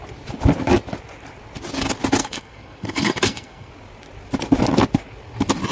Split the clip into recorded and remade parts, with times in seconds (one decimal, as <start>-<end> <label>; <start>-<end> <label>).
0.0-2.2 recorded; 2.2-3.7 remade; 3.7-5.7 recorded